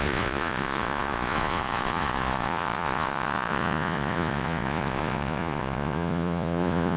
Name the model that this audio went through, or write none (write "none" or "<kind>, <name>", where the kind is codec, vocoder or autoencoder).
vocoder, Vocos